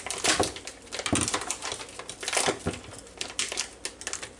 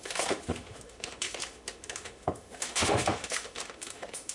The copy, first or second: second